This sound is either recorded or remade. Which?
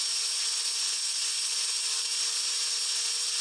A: recorded